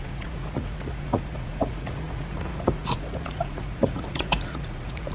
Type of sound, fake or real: fake